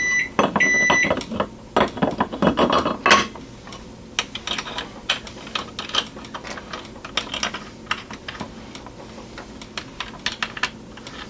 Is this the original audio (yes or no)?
yes